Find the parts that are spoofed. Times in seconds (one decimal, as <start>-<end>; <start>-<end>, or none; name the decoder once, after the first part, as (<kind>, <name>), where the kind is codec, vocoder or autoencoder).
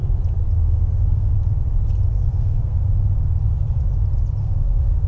0.6-1.3 (codec, SNAC); 2.1-2.8; 4.4-5.1